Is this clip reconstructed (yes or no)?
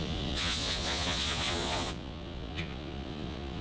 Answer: yes